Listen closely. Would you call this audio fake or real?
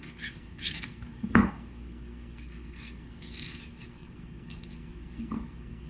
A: fake